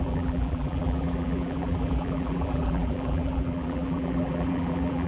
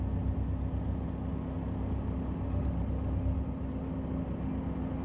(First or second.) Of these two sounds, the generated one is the first